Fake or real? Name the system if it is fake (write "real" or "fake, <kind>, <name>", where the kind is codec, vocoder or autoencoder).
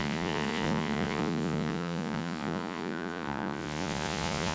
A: fake, vocoder, Vocos